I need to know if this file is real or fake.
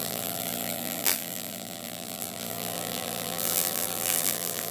fake